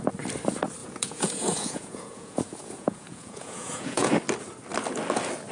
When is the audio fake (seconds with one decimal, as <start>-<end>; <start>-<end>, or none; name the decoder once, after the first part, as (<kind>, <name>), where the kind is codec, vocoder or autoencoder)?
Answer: 0.8-4.1 (vocoder, Vocos)